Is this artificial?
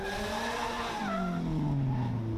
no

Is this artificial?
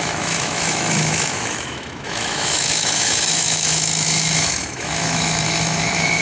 yes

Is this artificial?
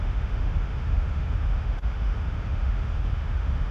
yes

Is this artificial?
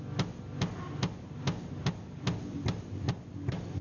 no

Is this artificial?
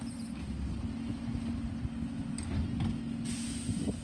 no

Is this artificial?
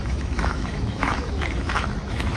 yes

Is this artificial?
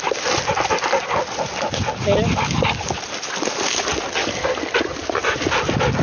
no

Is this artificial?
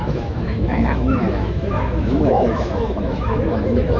yes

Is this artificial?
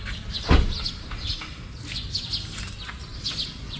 no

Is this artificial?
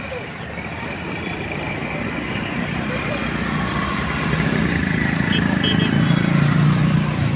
no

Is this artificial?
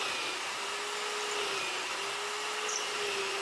no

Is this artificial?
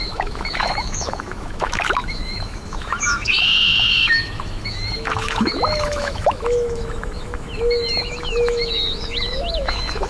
yes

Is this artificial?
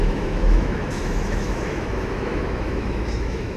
yes